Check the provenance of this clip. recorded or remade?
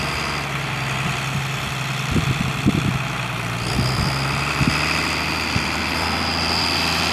remade